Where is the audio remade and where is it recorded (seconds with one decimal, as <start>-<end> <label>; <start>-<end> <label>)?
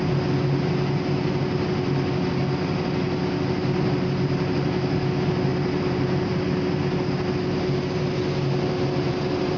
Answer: 0.0-9.6 recorded